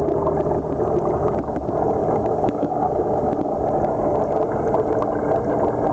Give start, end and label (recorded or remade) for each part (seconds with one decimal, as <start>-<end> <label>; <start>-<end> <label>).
0.0-2.0 recorded; 2.0-3.3 remade; 3.3-5.9 recorded